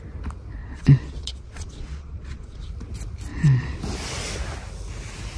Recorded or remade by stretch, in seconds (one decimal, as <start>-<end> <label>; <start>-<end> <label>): 0.0-0.6 recorded; 0.6-2.7 remade; 2.7-3.3 recorded; 3.3-3.8 remade; 3.8-5.4 recorded